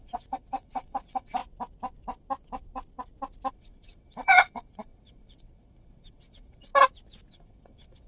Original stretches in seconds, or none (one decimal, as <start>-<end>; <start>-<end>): 1.4-3.5; 6.7-7.3